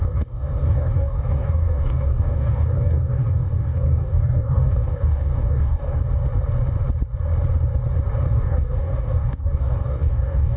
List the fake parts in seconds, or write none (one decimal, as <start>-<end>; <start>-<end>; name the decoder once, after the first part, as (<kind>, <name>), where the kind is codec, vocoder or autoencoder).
0.0-6.0 (codec, DAC); 8.3-10.6